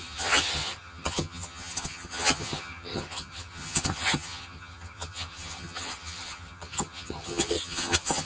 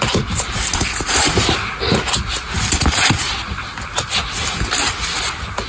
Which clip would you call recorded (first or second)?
second